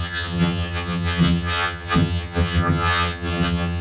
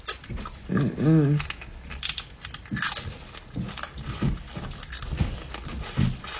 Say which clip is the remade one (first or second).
first